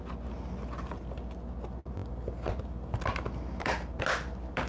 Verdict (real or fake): real